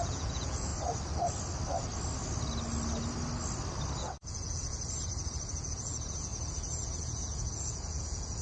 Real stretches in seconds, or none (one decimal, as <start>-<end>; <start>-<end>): 0.7-4.0